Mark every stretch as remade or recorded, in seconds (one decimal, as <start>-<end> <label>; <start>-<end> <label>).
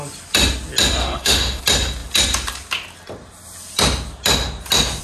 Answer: 0.0-1.0 recorded; 1.0-1.6 remade; 1.6-5.0 recorded